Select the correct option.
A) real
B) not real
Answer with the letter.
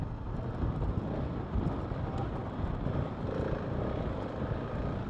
A